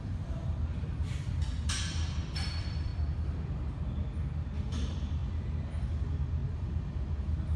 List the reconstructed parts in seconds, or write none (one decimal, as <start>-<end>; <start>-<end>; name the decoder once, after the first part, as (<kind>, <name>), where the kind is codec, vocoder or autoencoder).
0.0-2.9 (vocoder, BigVGAN v2); 4.7-5.2; 5.9-7.6